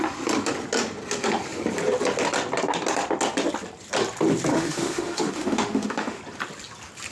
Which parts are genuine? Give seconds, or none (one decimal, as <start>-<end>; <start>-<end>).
0.0-4.5; 6.2-7.1